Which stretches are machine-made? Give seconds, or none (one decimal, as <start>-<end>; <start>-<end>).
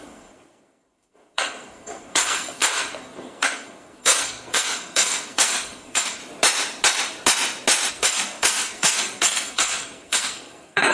0.0-6.2; 7.9-10.9